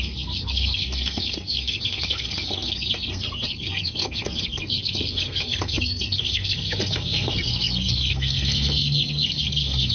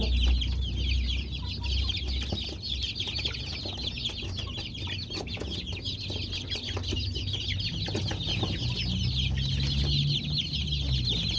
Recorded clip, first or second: second